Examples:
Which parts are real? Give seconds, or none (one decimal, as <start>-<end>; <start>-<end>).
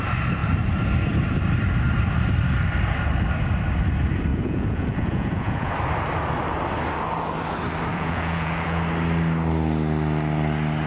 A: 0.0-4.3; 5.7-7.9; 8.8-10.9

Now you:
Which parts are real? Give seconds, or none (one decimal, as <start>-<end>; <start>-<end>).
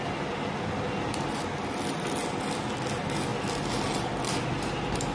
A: 0.0-5.1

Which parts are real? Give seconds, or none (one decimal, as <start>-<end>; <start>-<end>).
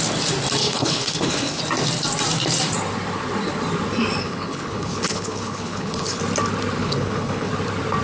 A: 0.0-0.6; 1.6-4.2; 6.2-6.8; 7.5-8.0